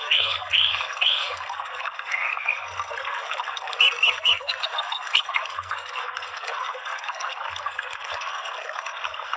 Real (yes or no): no